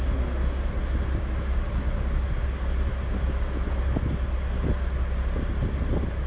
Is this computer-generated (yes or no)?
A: no